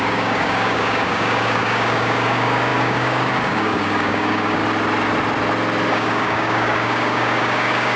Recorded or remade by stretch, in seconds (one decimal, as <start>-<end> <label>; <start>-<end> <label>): 0.0-4.6 remade; 4.6-5.9 recorded; 5.9-8.0 remade